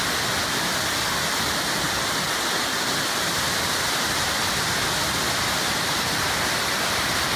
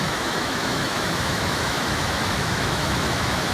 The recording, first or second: first